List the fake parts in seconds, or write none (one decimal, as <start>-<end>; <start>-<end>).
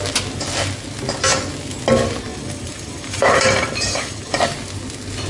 2.3-4.4